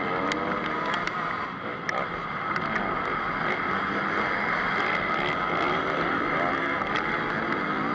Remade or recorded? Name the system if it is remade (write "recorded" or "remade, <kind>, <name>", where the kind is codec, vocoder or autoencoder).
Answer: recorded